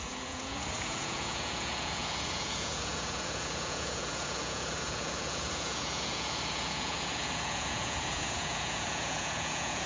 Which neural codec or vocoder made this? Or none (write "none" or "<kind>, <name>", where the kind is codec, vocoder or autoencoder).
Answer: vocoder, Vocos